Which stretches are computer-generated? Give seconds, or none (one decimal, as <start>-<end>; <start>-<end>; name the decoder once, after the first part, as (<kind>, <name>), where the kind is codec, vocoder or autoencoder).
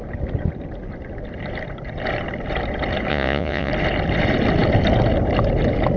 3.1-3.7 (vocoder, Vocos)